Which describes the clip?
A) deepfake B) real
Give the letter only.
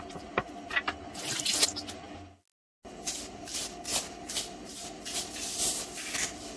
B